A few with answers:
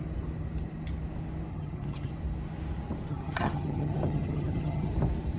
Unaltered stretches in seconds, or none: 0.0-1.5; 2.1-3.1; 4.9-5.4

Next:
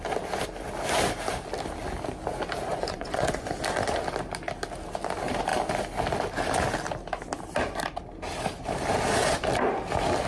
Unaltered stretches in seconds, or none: 0.0-2.7; 3.6-10.3

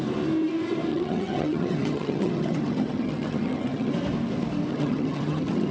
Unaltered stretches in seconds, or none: 0.0-0.9; 3.9-4.7